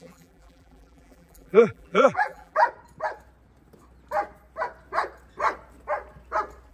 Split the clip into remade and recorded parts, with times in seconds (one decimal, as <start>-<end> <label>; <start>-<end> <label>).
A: 0.0-2.6 remade; 2.6-6.7 recorded